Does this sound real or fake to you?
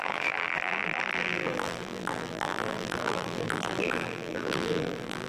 fake